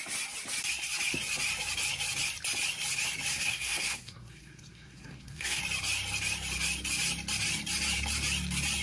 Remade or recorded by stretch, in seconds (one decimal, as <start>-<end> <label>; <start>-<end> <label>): 0.0-3.3 recorded; 3.3-5.6 remade; 5.6-8.8 recorded